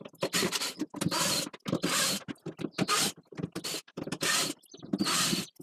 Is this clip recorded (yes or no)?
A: yes